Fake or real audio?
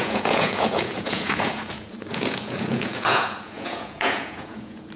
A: fake